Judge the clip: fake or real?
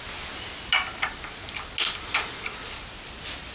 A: real